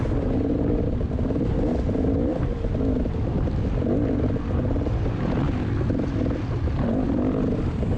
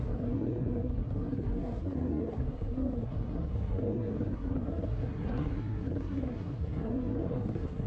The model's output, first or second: second